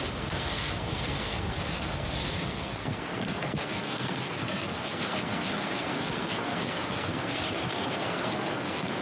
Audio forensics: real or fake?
fake